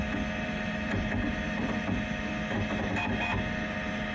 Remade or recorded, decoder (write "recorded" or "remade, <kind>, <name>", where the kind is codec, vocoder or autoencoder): recorded